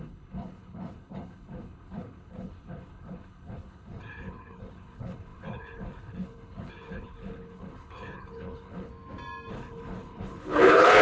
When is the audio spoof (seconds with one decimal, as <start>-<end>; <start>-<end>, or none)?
0.0-8.9; 9.5-11.0